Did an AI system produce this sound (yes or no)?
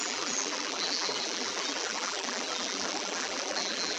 yes